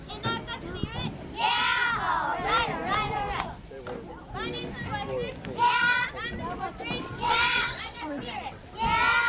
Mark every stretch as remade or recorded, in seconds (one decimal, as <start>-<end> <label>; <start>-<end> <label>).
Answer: 0.0-7.0 recorded; 7.0-8.7 remade; 8.7-9.3 recorded